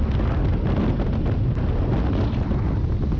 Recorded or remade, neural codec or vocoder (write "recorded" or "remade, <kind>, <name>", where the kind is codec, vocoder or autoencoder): recorded